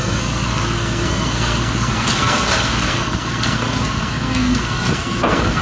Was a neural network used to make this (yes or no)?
yes